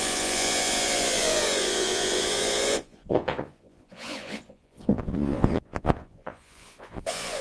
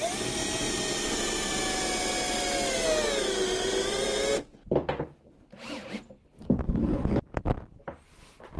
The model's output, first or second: first